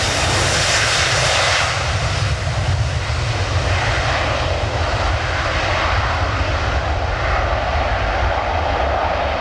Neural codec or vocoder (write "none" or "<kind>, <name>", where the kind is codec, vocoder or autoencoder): none